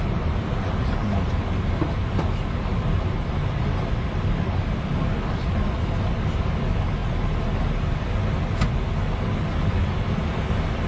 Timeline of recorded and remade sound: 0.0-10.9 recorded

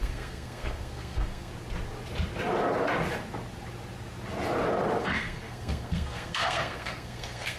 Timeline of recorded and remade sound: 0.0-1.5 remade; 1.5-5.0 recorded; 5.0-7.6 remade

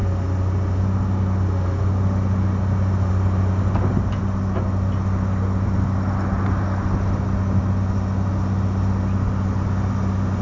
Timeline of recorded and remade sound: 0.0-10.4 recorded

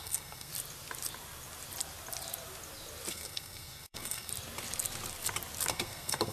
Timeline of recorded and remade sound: 0.0-0.5 remade; 0.5-3.1 recorded; 3.1-4.3 remade; 4.3-5.7 recorded; 5.7-6.3 remade